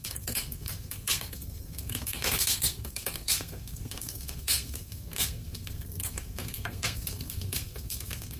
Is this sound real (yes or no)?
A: no